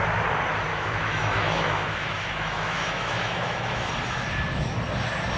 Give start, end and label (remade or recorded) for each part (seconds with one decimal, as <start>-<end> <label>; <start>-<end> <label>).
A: 0.0-0.7 recorded; 0.7-3.9 remade; 3.9-5.4 recorded